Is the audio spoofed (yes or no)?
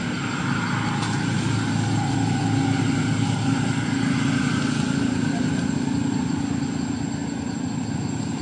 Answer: no